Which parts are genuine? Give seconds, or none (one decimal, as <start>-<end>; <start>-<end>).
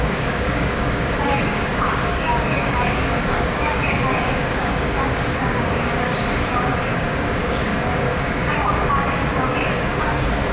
none